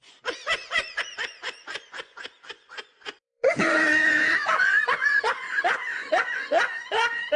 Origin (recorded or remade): remade